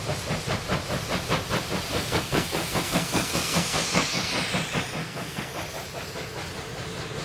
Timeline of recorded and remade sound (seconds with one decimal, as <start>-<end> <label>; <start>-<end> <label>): 0.0-1.9 recorded; 1.9-4.3 remade; 4.3-5.0 recorded; 5.0-5.5 remade; 5.5-7.2 recorded